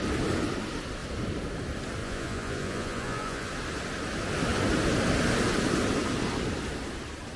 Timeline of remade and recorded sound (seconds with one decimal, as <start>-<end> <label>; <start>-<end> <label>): 0.0-2.0 recorded; 2.0-3.5 remade; 3.5-7.4 recorded